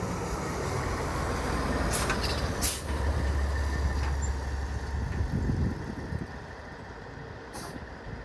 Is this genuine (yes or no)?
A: yes